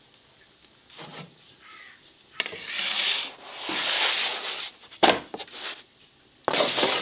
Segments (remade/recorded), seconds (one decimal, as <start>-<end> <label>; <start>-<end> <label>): 0.0-1.1 recorded; 1.1-3.1 remade; 3.1-7.0 recorded